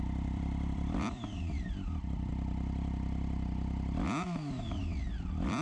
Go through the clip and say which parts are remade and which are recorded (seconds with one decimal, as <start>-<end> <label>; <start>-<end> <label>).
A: 0.0-2.3 remade; 2.3-4.8 recorded; 4.8-5.6 remade